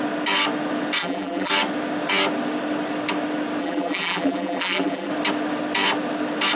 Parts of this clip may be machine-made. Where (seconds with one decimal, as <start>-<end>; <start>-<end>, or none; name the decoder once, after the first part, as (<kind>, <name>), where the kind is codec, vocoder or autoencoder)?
1.0-1.5 (vocoder, BigVGAN v2); 3.6-5.1